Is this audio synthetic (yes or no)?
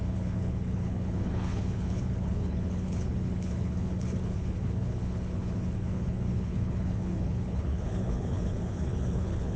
yes